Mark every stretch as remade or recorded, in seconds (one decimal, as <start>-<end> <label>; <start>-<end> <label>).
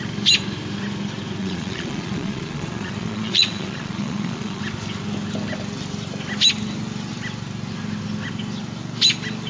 0.0-1.4 recorded; 1.4-4.6 remade; 4.6-9.5 recorded